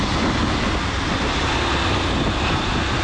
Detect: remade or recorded recorded